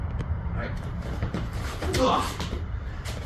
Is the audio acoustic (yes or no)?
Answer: no